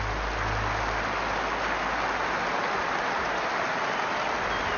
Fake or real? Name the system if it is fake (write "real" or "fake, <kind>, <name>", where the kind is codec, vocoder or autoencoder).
real